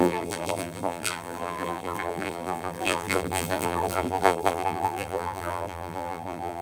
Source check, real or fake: fake